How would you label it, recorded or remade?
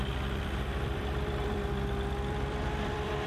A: remade